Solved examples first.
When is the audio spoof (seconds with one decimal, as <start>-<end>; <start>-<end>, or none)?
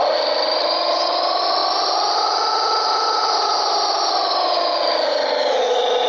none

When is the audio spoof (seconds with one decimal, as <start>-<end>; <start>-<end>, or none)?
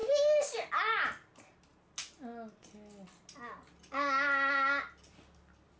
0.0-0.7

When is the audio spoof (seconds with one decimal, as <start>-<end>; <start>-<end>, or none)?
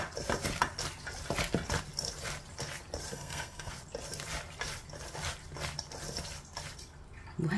3.1-3.7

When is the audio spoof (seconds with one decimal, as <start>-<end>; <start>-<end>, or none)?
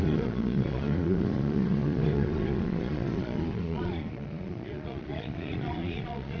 0.0-6.4